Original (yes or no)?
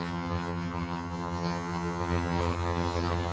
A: no